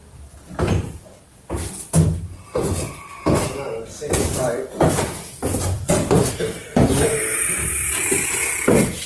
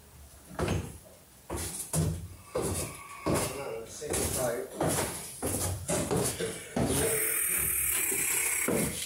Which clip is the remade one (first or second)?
first